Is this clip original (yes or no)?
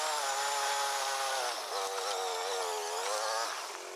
yes